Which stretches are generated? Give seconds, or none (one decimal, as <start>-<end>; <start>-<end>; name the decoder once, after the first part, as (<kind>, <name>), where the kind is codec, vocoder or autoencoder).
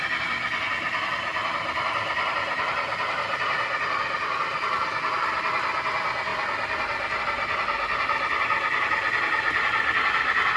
none